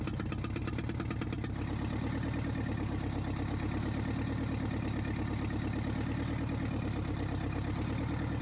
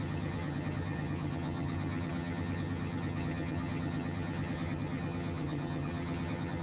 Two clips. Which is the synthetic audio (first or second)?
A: second